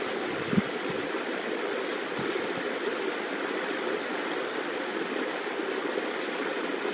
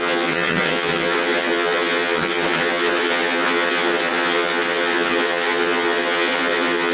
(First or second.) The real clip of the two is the first